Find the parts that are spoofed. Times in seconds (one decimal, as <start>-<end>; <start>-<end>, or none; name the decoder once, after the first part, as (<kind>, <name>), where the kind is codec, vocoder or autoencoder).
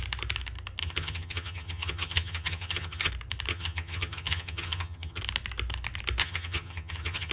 0.8-3.1 (vocoder, HiFi-GAN); 3.5-5.2; 6.2-7.3